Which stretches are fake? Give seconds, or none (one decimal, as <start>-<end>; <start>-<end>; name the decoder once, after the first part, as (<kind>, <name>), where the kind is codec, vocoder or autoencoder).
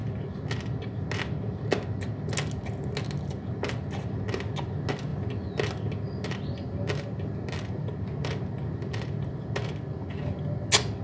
none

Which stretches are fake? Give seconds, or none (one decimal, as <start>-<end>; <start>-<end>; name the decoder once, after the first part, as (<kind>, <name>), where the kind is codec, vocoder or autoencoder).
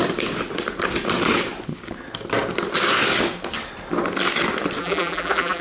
4.8-5.6 (vocoder, BigVGAN v2)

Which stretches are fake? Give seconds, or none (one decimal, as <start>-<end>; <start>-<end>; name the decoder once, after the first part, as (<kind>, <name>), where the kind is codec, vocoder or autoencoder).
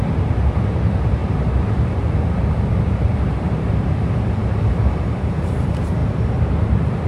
0.0-1.2 (vocoder, BigVGAN v2); 2.7-6.0